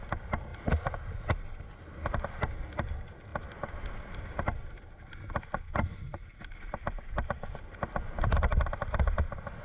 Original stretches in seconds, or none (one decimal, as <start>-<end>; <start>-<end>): 0.0-9.6